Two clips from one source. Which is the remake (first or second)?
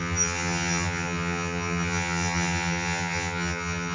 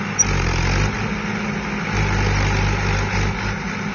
first